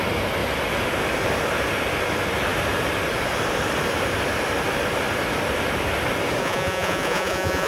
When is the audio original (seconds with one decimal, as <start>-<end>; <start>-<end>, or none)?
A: 0.0-6.4